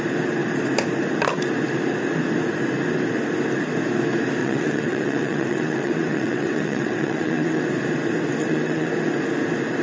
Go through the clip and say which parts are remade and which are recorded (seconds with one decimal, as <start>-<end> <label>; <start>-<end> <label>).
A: 0.0-4.4 recorded; 4.4-7.6 remade; 7.6-8.4 recorded; 8.4-8.9 remade; 8.9-9.8 recorded